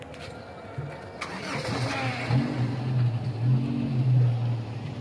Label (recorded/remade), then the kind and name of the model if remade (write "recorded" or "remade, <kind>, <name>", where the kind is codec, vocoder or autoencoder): recorded